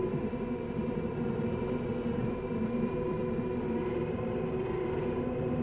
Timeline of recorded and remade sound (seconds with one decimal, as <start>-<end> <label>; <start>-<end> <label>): 0.0-3.2 remade; 3.2-3.8 recorded; 3.8-5.6 remade